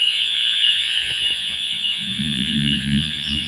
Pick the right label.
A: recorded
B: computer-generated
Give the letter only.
B